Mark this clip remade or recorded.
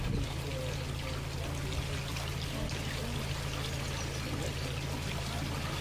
recorded